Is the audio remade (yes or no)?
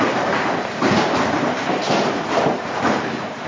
yes